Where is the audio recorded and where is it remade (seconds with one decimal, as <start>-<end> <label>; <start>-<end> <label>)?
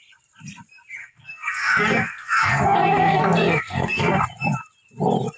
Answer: 0.0-1.0 recorded; 1.0-4.2 remade; 4.2-5.4 recorded